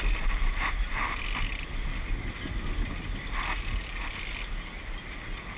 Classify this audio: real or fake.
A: real